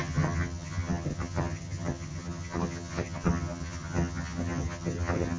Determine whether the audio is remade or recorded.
remade